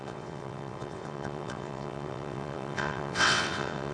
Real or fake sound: fake